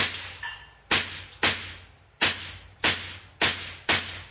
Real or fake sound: real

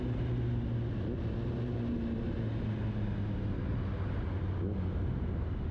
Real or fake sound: real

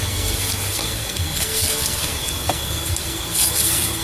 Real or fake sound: fake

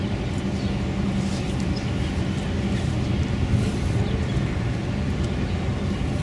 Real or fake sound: real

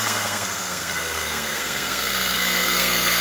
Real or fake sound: fake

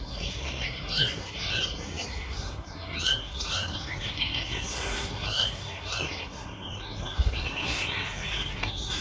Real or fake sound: fake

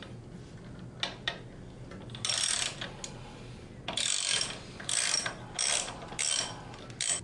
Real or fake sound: real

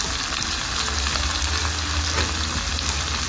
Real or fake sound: real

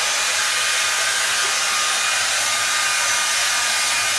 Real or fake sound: real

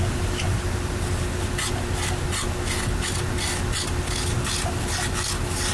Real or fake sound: real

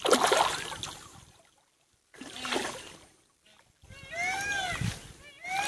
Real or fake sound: real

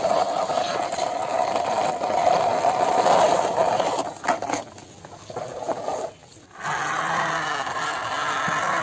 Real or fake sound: real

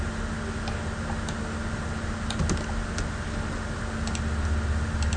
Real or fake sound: real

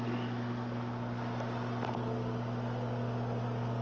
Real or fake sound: real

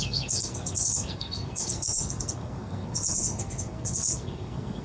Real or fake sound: fake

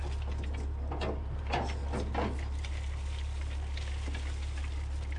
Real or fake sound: real